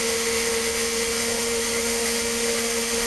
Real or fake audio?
fake